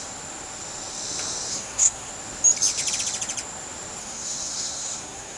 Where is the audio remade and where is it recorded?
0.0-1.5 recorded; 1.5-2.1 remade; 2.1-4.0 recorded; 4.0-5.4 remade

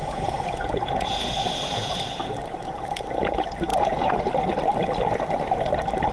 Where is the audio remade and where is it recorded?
0.0-1.9 remade; 1.9-3.7 recorded; 3.7-4.2 remade; 4.2-6.1 recorded

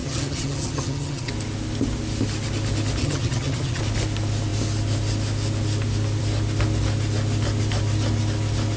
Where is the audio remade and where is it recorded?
0.0-1.3 remade; 1.3-3.0 recorded; 3.0-3.8 remade; 3.8-8.8 recorded

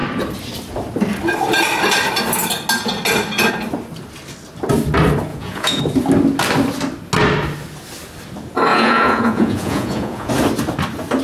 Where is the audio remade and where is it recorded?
0.0-5.3 recorded; 5.3-5.8 remade; 5.8-8.7 recorded; 8.7-10.3 remade; 10.3-11.2 recorded

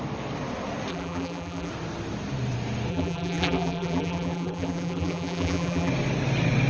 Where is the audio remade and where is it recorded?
0.0-0.9 recorded; 0.9-1.7 remade; 1.7-2.9 recorded; 2.9-5.9 remade; 5.9-6.7 recorded

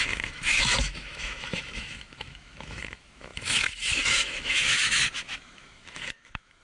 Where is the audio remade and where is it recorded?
0.0-6.6 remade

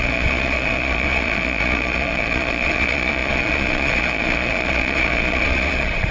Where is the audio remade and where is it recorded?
0.0-6.1 remade

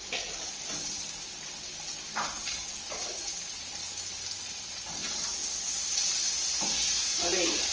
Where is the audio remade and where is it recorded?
0.0-7.7 recorded